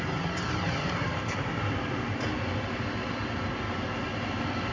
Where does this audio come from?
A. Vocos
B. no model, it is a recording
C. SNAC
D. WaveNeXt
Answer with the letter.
B